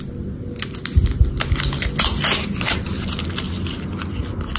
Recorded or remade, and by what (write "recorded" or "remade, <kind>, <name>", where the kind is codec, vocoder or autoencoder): recorded